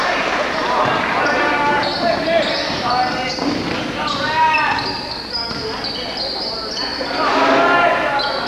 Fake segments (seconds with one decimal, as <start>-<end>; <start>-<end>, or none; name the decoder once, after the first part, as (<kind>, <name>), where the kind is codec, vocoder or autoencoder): 0.0-2.7 (vocoder, BigVGAN v2)